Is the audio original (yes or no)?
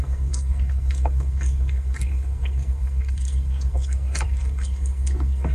no